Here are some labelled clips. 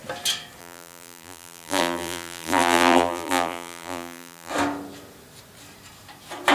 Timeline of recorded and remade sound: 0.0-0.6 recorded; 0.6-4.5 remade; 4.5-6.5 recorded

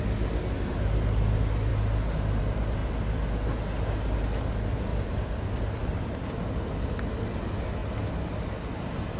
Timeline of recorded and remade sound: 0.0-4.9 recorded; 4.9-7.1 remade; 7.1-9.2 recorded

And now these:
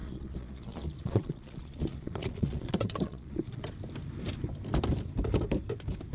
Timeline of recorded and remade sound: 0.0-3.7 remade; 3.7-6.1 recorded